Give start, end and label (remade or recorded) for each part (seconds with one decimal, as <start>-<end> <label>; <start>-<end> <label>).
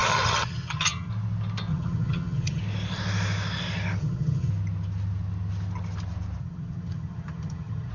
0.0-1.1 remade; 1.1-1.7 recorded; 1.7-2.6 remade; 2.6-4.0 recorded; 4.0-4.5 remade; 4.5-6.4 recorded; 6.4-7.9 remade